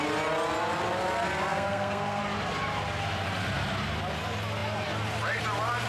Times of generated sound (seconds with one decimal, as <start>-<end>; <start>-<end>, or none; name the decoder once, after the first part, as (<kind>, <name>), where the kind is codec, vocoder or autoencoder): 1.5-2.2 (codec, SNAC)